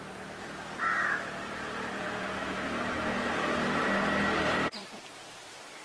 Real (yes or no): no